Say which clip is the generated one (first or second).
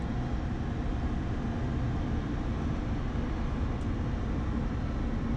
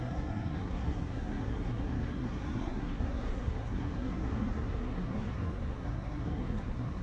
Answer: second